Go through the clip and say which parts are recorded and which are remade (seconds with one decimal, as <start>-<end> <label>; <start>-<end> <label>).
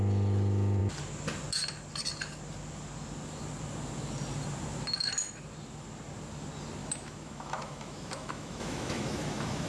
0.0-6.8 recorded; 6.8-9.7 remade